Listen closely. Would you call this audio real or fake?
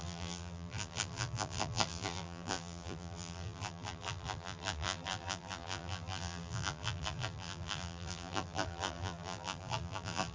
fake